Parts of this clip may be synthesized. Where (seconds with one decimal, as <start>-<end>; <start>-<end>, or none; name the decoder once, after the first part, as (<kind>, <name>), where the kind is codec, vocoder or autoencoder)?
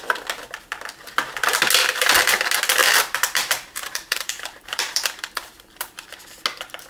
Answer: 2.8-6.1 (vocoder, BigVGAN v2)